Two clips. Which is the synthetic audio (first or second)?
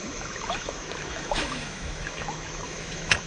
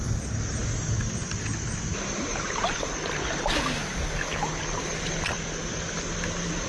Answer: first